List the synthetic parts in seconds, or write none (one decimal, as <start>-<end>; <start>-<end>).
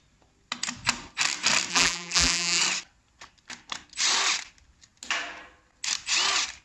1.7-2.6